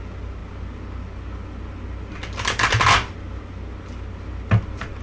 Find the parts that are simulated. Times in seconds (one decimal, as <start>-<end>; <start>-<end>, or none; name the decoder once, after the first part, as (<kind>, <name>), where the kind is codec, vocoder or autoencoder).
none